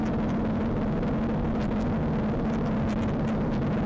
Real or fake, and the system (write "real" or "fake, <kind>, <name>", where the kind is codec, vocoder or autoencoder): real